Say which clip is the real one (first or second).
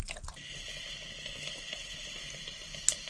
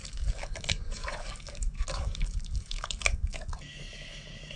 first